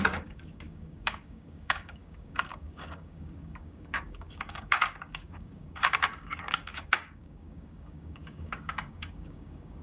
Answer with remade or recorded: remade